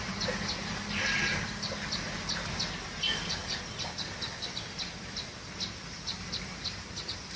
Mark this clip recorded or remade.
recorded